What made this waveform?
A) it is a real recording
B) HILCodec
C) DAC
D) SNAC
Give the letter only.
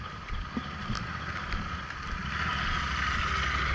A